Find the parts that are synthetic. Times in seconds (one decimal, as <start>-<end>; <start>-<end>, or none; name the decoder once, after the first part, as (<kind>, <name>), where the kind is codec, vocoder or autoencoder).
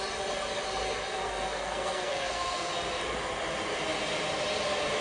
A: 1.1-2.7 (codec, SNAC)